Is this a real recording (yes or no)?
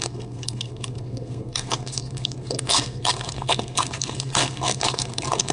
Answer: no